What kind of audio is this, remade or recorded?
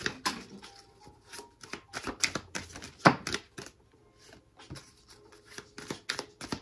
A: recorded